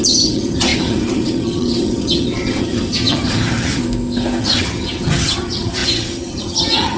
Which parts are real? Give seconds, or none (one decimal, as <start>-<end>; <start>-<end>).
3.8-4.4